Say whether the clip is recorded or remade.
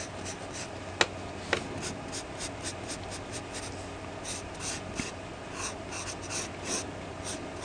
recorded